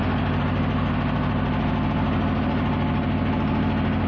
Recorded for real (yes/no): yes